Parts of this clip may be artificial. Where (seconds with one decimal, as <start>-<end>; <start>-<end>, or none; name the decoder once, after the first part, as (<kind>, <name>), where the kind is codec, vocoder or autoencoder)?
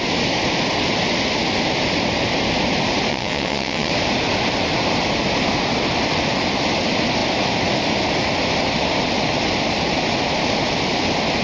3.1-3.9 (vocoder, WaveNeXt)